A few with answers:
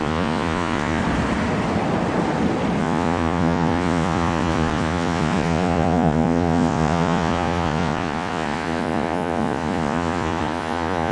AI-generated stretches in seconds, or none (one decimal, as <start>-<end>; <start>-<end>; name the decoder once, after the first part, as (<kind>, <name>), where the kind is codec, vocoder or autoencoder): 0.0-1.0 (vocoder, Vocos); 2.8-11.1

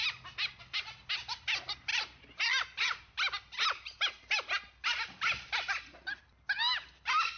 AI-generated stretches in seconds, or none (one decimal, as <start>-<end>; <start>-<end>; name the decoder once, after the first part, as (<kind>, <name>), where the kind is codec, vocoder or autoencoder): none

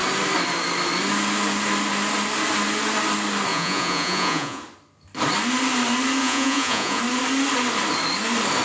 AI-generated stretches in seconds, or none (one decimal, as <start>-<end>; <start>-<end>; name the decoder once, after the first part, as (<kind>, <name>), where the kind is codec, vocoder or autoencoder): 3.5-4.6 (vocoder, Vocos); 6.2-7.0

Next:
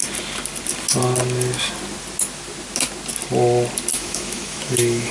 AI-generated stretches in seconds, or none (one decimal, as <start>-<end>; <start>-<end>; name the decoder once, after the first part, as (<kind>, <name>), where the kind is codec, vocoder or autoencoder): 3.9-5.1 (autoencoder, DAC-VAE)